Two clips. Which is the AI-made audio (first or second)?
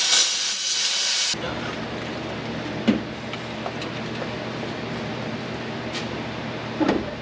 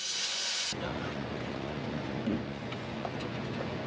second